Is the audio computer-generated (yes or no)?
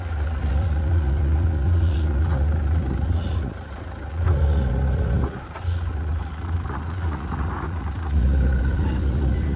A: yes